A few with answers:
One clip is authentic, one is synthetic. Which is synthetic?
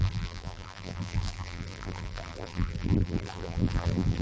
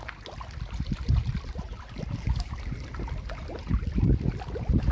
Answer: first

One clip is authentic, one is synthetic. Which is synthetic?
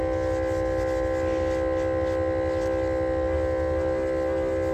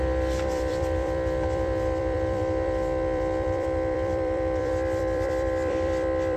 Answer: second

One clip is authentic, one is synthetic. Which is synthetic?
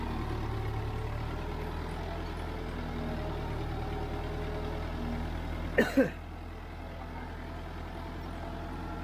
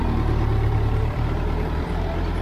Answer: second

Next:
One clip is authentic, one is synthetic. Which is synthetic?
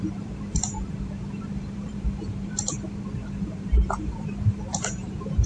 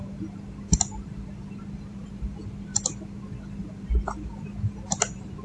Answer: first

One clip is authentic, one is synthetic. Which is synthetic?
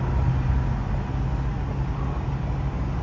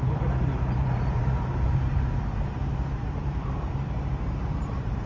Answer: second